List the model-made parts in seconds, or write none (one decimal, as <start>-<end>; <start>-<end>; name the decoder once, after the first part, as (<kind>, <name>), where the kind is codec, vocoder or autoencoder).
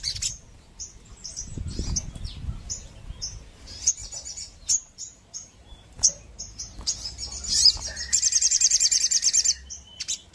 4.0-9.0 (vocoder, BigVGAN v2)